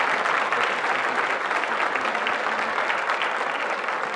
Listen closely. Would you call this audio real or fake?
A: real